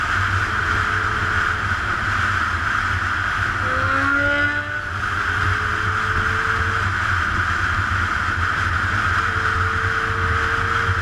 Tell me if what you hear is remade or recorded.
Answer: recorded